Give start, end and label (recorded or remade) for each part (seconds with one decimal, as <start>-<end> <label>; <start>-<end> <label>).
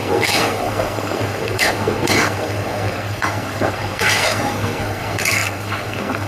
0.0-6.3 remade